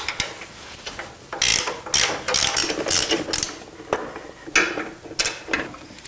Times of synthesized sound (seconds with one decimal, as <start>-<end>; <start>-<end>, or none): none